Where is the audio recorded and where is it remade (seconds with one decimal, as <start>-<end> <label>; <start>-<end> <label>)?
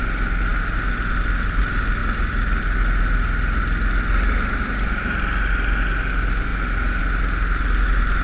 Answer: 0.0-8.2 recorded